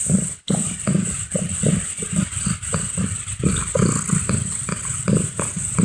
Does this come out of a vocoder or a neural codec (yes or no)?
no